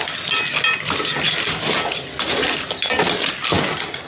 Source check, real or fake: real